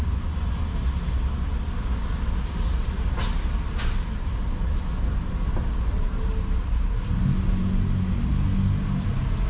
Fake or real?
real